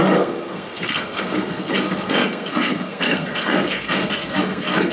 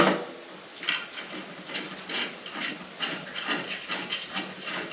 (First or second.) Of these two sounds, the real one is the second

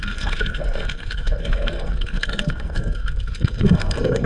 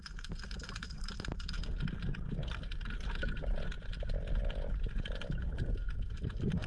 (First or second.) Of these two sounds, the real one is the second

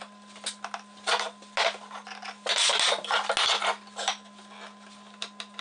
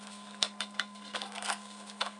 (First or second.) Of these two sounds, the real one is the first